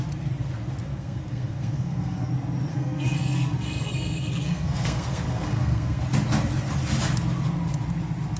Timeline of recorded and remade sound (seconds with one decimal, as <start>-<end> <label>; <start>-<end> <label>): 0.0-0.8 recorded; 0.8-2.3 remade; 2.3-2.7 recorded; 2.7-6.0 remade; 6.0-8.4 recorded